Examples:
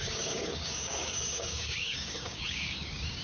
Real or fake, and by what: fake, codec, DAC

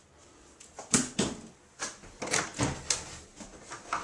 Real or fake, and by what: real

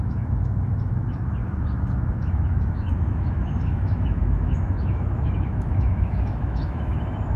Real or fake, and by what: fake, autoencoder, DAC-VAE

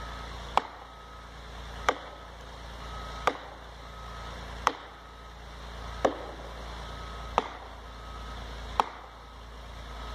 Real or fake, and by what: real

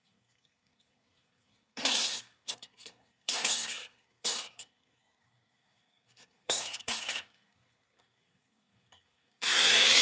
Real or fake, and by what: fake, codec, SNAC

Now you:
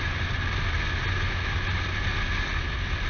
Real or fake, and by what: real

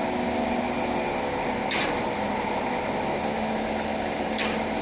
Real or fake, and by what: real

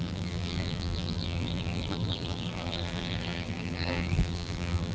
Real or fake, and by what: fake, vocoder, BigVGAN v2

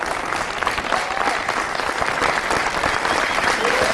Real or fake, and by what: real